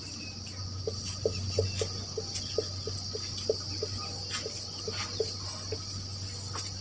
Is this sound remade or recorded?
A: remade